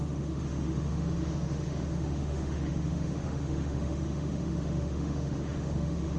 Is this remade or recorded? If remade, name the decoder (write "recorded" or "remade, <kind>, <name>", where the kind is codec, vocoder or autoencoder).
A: remade, autoencoder, DAC-VAE